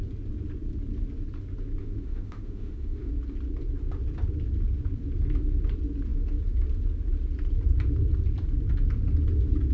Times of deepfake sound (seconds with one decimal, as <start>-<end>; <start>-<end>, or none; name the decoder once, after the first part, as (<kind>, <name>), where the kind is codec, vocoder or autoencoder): 1.8-3.1 (autoencoder, DAC-VAE)